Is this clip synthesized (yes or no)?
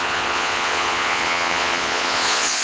yes